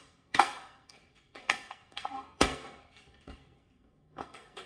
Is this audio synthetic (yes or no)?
yes